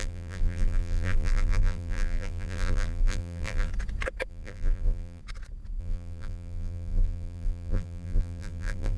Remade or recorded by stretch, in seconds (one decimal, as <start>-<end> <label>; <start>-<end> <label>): 0.0-3.7 remade; 3.7-4.3 recorded; 4.3-5.2 remade; 5.2-5.8 recorded; 5.8-9.0 remade